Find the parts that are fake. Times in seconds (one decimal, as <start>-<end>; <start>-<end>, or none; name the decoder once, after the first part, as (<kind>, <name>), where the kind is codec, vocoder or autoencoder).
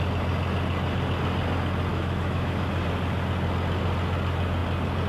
1.9-2.7 (autoencoder, DAC-VAE)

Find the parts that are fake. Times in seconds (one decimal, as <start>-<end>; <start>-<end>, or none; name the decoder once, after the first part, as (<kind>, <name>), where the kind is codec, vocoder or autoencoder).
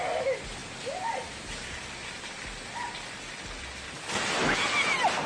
none